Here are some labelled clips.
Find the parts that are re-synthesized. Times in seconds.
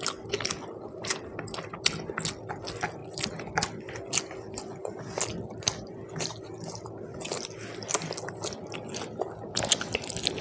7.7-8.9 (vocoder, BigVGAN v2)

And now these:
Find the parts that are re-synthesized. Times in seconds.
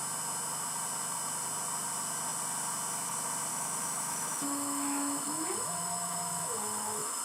3.5-7.2 (autoencoder, DAC-VAE)